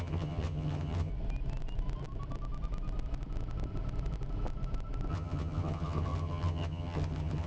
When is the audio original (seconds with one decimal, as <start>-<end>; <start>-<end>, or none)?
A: 1.1-5.1